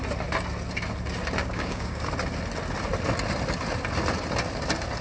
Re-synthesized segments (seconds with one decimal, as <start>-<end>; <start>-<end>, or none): 1.4-2.0